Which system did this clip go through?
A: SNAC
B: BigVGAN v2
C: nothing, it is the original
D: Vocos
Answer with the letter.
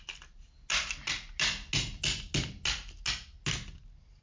C